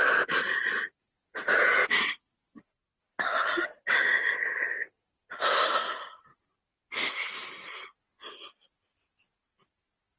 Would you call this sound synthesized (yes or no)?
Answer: no